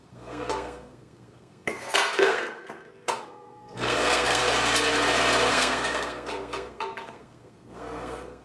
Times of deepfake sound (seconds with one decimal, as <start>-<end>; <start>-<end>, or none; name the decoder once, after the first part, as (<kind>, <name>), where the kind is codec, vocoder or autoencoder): 0.0-4.4 (codec, SNAC); 5.5-8.4